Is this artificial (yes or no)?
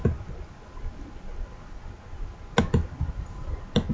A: no